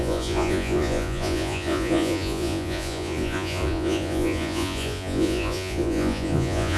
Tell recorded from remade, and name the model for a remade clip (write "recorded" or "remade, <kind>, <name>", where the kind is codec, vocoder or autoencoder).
remade, vocoder, Vocos